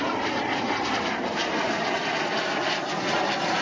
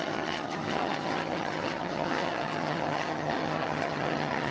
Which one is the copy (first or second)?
second